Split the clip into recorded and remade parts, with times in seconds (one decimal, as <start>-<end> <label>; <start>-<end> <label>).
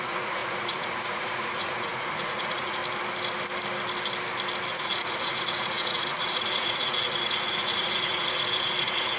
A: 0.0-2.8 remade; 2.8-4.7 recorded; 4.7-9.2 remade